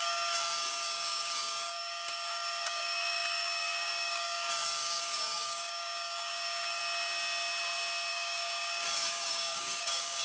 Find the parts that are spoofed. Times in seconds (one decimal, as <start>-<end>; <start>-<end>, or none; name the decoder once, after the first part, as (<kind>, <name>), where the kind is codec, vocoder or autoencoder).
0.0-6.8 (codec, DAC); 8.1-10.2